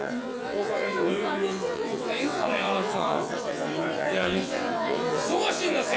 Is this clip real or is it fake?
fake